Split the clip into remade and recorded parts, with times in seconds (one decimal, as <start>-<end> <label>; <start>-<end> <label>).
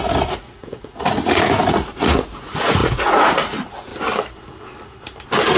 0.0-3.9 remade; 3.9-5.6 recorded